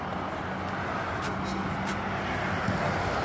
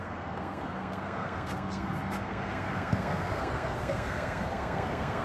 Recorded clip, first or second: first